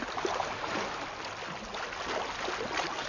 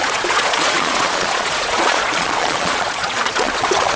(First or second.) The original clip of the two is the first